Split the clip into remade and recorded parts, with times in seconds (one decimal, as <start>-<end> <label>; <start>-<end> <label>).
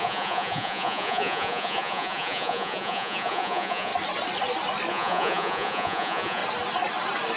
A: 0.0-3.9 remade; 3.9-4.9 recorded; 4.9-6.4 remade; 6.4-7.4 recorded